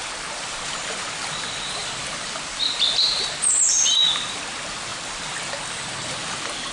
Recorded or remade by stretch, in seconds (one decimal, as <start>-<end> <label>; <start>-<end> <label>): 0.0-1.8 recorded; 1.8-4.4 remade; 4.4-6.7 recorded